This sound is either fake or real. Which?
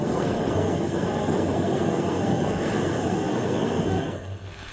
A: fake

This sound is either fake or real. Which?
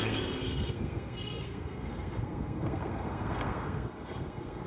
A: fake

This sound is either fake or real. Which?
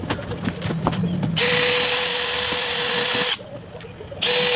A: real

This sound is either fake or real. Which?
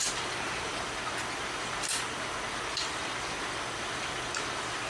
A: real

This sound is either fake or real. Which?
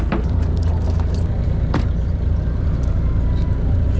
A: fake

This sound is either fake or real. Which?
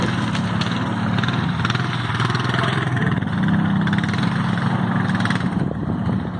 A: real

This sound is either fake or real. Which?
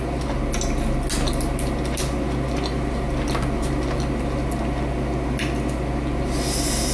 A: real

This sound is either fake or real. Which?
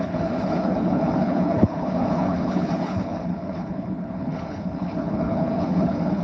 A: fake